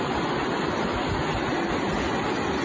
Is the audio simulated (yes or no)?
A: no